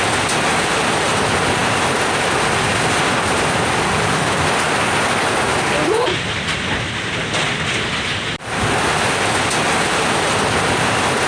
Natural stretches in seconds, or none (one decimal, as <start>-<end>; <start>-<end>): 0.0-11.3